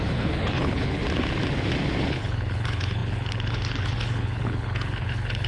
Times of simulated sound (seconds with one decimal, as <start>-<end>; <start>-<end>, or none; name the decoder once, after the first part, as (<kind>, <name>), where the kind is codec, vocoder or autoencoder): 0.0-1.0 (codec, HILCodec); 2.1-5.5